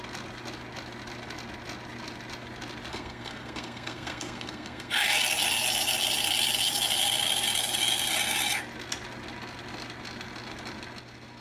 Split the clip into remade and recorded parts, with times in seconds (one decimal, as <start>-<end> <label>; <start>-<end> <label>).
0.0-2.9 recorded; 2.9-5.1 remade; 5.1-11.4 recorded

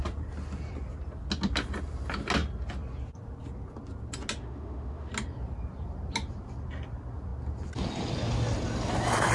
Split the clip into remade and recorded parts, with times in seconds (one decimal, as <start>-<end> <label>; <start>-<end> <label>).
0.0-4.4 recorded; 4.4-5.1 remade; 5.1-9.3 recorded

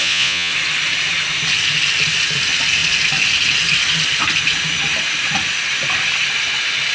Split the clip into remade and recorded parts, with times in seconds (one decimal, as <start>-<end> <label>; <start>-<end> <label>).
0.0-0.5 remade; 0.5-6.9 recorded

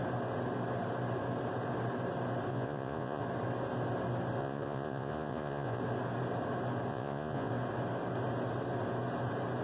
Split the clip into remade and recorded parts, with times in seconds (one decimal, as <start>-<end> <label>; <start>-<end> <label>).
0.0-2.5 recorded; 2.5-3.2 remade; 3.2-4.4 recorded; 4.4-5.8 remade; 5.8-6.9 recorded; 6.9-7.5 remade; 7.5-9.6 recorded

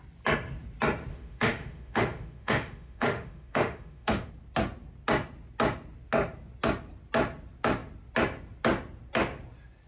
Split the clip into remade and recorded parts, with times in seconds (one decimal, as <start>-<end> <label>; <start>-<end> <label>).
0.0-1.1 recorded; 1.1-4.3 remade; 4.3-9.9 recorded